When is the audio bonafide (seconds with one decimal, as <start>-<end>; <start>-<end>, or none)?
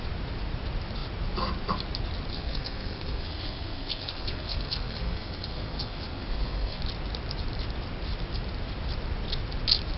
0.0-2.3; 6.8-10.0